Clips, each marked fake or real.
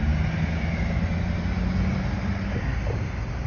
real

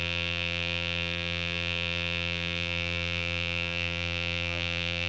fake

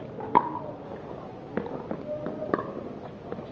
real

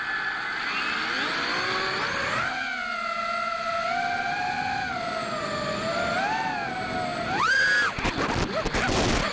real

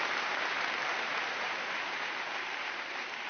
fake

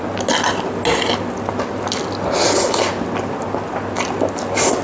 real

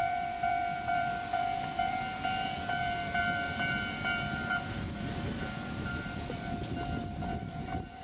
fake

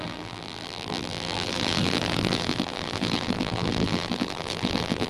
fake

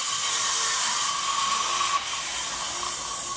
real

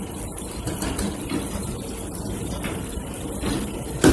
real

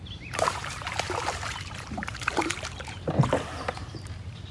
fake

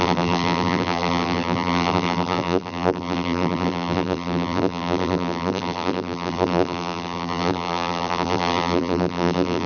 fake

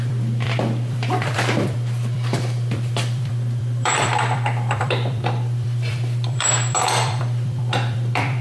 fake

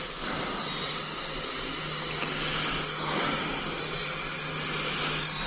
real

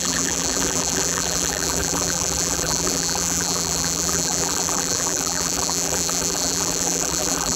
fake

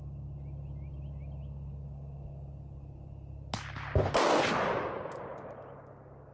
real